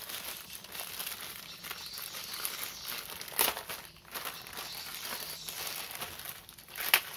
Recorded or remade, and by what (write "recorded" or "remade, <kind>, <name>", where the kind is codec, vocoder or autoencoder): recorded